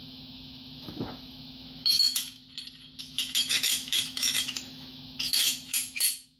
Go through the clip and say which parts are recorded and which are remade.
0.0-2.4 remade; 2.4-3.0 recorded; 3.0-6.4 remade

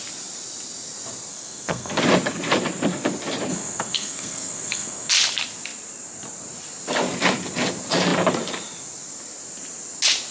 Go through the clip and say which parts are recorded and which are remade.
0.0-1.3 recorded; 1.3-2.0 remade; 2.0-3.5 recorded; 3.5-5.1 remade; 5.1-10.3 recorded

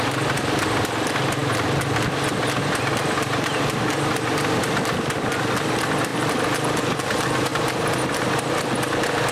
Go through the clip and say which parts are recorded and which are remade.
0.0-6.1 remade; 6.1-6.8 recorded; 6.8-7.5 remade; 7.5-8.5 recorded; 8.5-9.3 remade